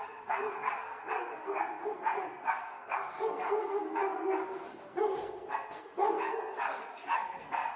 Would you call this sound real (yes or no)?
no